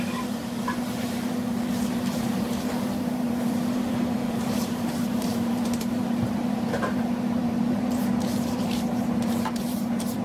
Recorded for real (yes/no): no